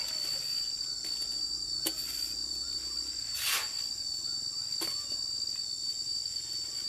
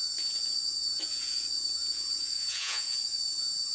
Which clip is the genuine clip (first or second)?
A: first